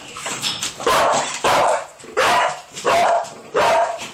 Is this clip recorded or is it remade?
remade